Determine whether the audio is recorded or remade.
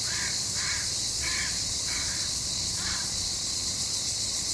remade